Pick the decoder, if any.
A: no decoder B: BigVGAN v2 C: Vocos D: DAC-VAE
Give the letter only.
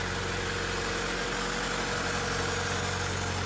A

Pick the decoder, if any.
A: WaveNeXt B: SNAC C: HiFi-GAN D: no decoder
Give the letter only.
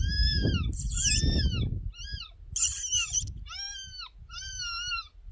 D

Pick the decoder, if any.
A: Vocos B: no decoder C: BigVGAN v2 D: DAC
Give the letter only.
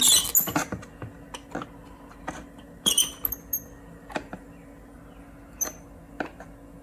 B